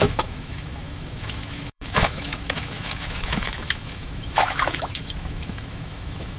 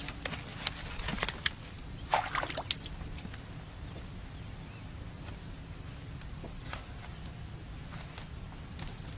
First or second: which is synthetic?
first